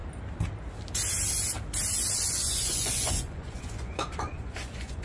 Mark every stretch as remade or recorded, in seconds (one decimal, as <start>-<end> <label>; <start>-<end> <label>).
0.0-2.3 recorded; 2.3-5.0 remade